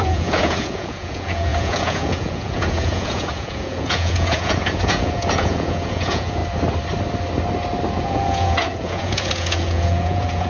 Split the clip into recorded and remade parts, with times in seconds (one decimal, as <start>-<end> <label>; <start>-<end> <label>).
0.0-6.4 remade; 6.4-7.9 recorded; 7.9-10.5 remade